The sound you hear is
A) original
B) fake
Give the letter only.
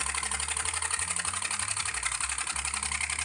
A